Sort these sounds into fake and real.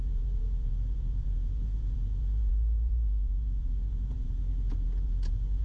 fake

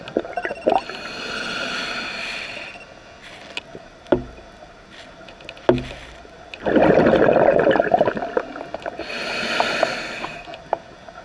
real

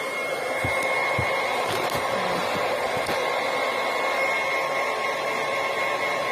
real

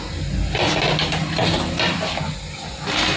real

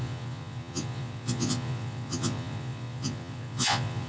fake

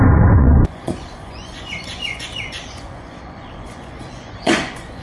fake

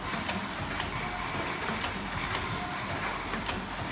real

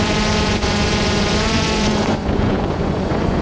fake